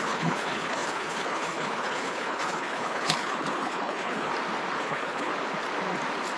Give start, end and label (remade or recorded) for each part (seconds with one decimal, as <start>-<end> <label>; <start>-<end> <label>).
0.0-4.3 remade; 4.3-4.8 recorded; 4.8-5.3 remade; 5.3-6.4 recorded